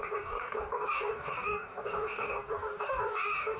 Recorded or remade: remade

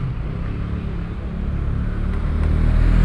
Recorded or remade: recorded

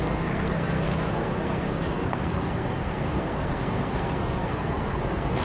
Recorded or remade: remade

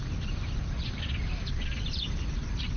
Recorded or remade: recorded